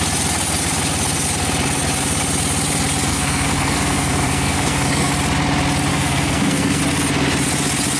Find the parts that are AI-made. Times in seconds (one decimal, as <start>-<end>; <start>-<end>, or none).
3.1-5.1; 5.9-6.8